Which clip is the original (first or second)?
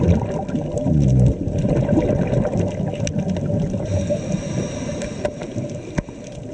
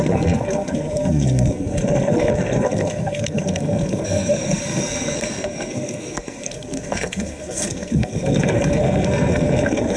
first